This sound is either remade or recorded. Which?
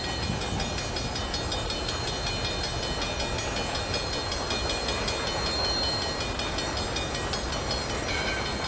recorded